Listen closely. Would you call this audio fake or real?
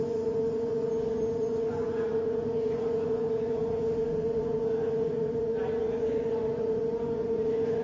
fake